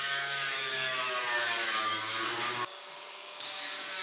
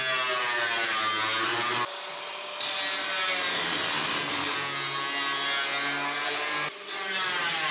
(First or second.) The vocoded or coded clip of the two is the first